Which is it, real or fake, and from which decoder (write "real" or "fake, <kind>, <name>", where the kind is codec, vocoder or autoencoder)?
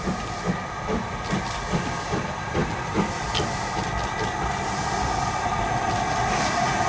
real